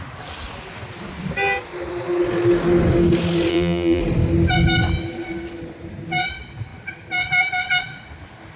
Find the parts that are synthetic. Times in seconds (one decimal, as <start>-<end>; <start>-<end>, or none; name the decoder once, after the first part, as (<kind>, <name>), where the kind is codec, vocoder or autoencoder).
3.5-4.0 (vocoder, BigVGAN v2)